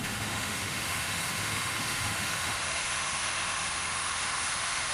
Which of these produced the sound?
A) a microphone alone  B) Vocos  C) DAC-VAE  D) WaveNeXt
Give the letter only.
C